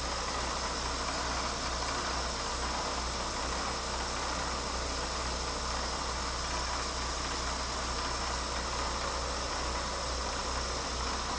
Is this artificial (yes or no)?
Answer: no